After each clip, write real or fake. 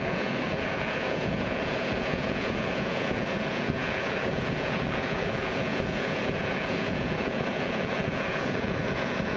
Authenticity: fake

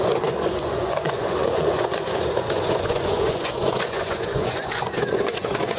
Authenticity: fake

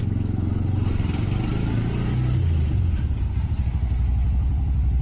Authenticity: real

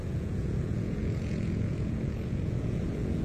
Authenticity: fake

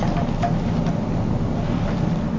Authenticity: real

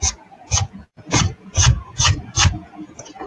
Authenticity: fake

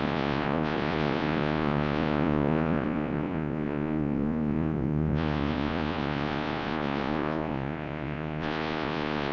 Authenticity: fake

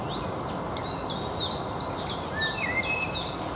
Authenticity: real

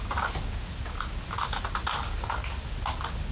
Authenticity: real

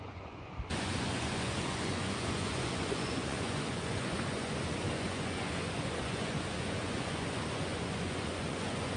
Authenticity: fake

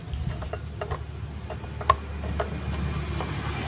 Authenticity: real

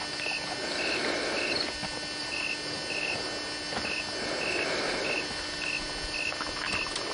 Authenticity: real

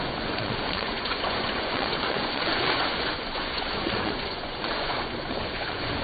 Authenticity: fake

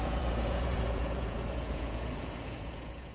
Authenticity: fake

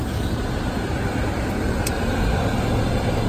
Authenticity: real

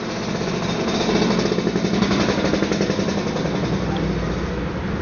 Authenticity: real